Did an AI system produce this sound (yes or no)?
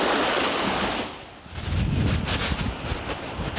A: no